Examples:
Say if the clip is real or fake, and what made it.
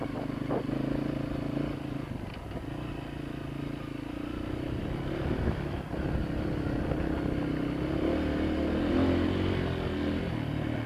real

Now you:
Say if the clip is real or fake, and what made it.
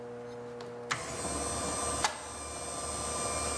real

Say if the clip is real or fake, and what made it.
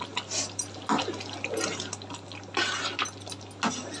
real